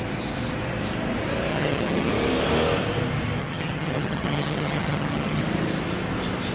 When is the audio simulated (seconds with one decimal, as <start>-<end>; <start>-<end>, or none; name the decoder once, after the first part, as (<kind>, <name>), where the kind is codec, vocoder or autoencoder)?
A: 1.5-2.1 (vocoder, HiFi-GAN); 3.4-5.4